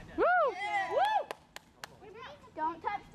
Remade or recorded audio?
recorded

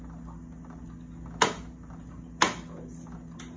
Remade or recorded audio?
recorded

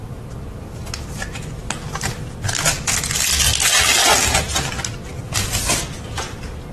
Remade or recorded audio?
recorded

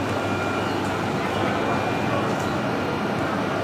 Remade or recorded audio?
recorded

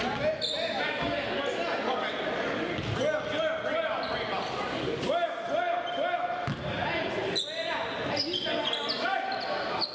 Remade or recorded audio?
recorded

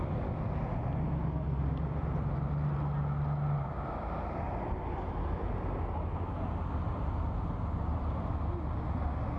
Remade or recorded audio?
recorded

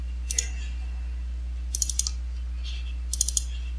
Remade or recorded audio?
recorded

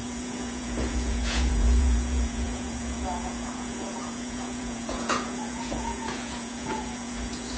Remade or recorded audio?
remade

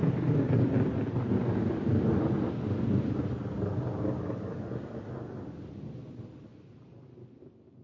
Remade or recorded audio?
recorded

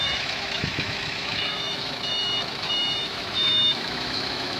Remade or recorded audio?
remade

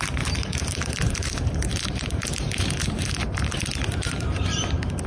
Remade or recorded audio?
remade